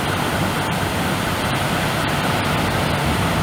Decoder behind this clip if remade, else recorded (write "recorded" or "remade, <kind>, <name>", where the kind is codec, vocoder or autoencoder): recorded